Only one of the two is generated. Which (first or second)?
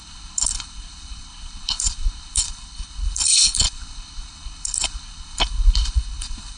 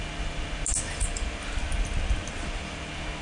first